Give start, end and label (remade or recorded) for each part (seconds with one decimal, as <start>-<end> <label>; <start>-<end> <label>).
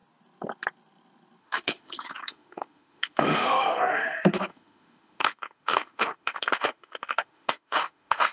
0.0-1.4 recorded; 1.4-8.3 remade